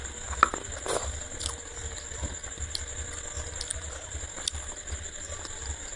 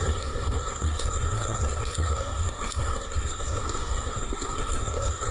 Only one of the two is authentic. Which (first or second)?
first